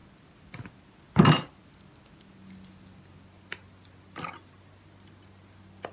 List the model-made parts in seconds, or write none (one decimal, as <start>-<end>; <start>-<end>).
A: none